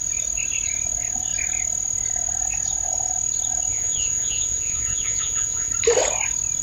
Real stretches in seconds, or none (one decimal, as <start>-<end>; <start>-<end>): 0.0-3.7; 5.7-6.6